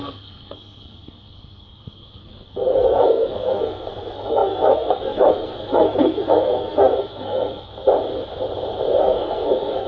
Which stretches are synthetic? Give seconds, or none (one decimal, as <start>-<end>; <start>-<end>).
0.0-7.7; 9.0-9.9